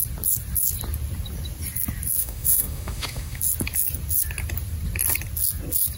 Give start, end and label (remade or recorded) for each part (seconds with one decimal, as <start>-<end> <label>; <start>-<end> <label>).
0.0-2.2 recorded; 2.2-3.4 remade; 3.4-6.0 recorded